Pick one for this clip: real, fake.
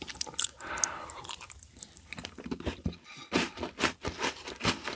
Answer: real